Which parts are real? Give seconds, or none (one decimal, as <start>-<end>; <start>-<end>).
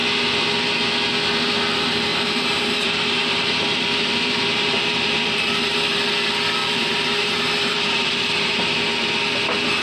0.0-2.1; 6.0-6.6; 8.6-9.8